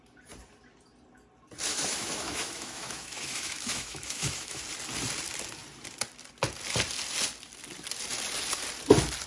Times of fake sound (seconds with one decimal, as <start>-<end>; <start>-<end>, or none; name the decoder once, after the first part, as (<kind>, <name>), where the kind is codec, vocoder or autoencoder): 1.7-4.6 (autoencoder, DAC-VAE)